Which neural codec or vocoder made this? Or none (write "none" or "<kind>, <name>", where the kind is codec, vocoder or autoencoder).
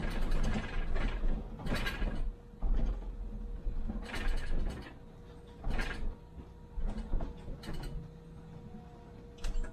none